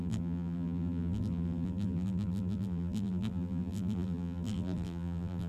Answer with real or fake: fake